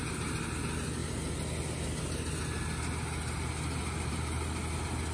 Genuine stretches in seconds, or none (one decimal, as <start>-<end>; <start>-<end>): 0.0-5.1